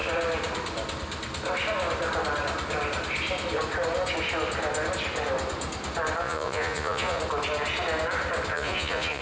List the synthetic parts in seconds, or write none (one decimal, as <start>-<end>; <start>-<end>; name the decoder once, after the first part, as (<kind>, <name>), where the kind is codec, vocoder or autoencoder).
6.2-7.2 (vocoder, Vocos); 8.5-9.2